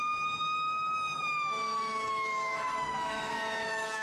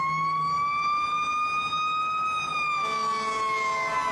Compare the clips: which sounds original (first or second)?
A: second